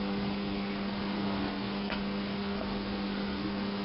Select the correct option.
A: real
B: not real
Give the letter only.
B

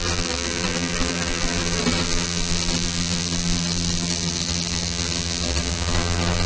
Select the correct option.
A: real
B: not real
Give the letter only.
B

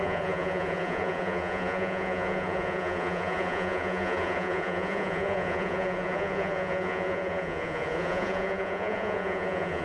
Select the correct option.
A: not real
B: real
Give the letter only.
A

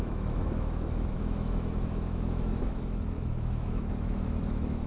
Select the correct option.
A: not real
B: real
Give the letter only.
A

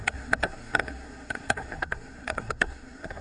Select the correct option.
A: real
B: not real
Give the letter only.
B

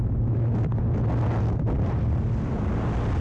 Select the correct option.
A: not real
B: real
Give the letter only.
B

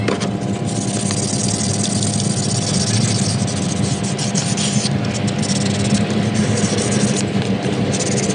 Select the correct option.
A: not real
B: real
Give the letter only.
B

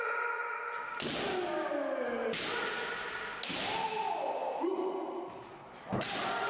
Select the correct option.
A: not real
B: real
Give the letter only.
B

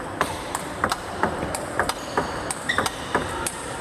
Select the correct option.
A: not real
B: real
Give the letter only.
A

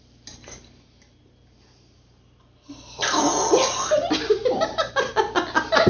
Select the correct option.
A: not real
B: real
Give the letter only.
B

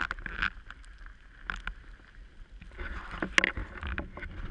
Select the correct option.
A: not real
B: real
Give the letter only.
B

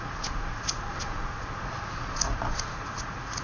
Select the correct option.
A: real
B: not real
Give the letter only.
B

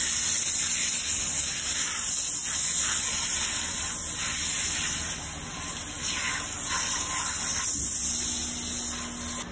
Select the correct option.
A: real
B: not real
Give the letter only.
A